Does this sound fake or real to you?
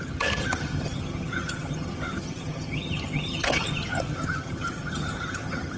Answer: fake